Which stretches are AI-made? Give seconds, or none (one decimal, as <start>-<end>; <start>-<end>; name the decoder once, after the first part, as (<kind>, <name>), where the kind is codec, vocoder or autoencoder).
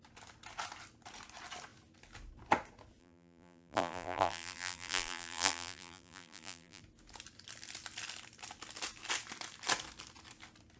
3.0-6.8 (vocoder, BigVGAN v2)